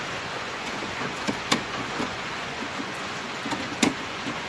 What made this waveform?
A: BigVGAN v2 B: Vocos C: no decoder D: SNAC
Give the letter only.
B